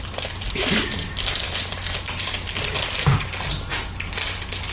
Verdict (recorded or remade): recorded